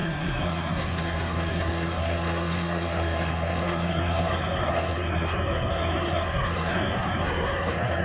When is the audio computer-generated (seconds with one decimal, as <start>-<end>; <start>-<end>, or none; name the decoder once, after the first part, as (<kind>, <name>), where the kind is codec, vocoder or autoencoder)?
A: 0.0-8.0 (codec, SNAC)